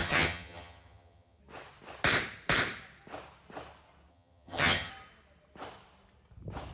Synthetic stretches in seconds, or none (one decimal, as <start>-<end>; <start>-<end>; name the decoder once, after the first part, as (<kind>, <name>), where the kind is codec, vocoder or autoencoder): 0.0-1.4 (vocoder, HiFi-GAN); 4.1-4.9